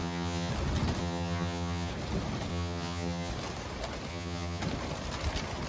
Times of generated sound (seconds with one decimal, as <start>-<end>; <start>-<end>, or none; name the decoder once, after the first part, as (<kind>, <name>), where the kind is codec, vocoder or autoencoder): 0.0-0.5 (vocoder, HiFi-GAN); 1.0-1.9; 2.5-3.3; 4.1-4.6